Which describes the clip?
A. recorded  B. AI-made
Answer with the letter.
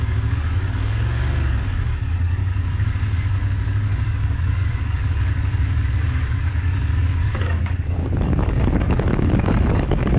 B